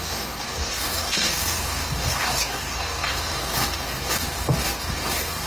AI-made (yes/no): yes